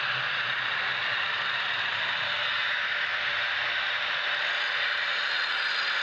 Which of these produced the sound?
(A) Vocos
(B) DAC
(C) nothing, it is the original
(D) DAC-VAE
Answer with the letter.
C